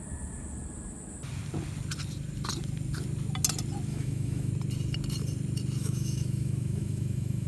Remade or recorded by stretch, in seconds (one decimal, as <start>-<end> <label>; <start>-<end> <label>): 0.0-3.9 recorded; 3.9-4.5 remade; 4.5-5.8 recorded; 5.8-7.5 remade